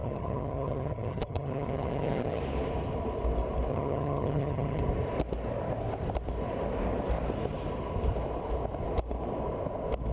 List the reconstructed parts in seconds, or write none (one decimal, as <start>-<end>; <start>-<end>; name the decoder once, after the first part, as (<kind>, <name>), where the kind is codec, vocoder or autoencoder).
0.0-2.4 (vocoder, HiFi-GAN); 3.7-4.8